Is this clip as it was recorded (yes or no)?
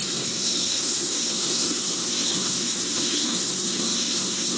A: no